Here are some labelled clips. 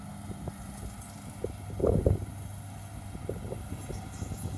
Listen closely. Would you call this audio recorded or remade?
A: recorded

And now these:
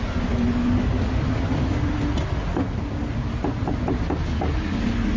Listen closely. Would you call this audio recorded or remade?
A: recorded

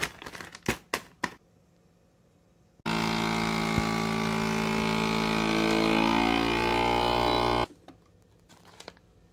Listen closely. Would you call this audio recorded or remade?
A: recorded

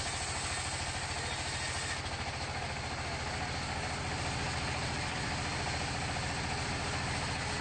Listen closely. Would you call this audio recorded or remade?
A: recorded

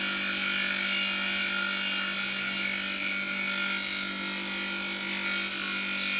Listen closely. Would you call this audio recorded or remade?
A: recorded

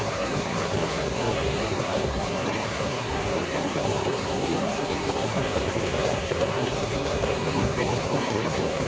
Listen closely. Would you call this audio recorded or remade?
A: remade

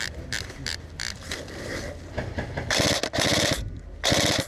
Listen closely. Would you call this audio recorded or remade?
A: recorded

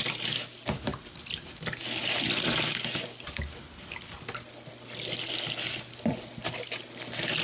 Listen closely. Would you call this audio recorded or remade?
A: recorded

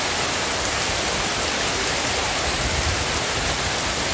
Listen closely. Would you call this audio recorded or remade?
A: recorded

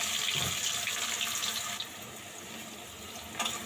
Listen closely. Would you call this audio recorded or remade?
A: recorded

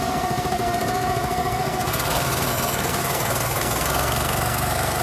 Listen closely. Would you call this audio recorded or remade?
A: remade